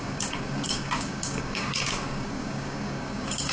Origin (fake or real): fake